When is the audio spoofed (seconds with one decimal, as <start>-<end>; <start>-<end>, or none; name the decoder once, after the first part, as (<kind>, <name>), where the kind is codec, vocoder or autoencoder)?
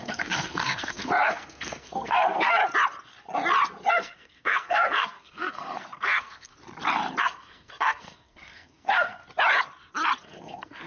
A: 0.0-2.6 (codec, SNAC); 3.9-6.5; 7.2-9.2; 10.2-10.9